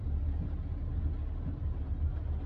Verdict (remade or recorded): recorded